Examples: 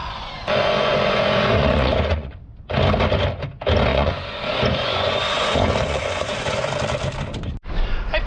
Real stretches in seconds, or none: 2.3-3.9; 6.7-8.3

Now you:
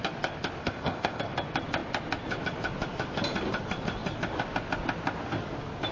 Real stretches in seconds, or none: 0.0-0.6; 1.2-5.9

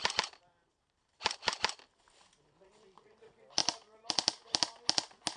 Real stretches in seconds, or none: 1.6-5.4